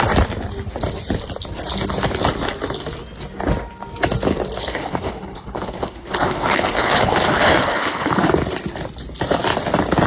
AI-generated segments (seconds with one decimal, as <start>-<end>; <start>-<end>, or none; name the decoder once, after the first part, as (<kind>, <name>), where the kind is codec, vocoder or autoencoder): 4.6-8.3 (codec, HILCodec)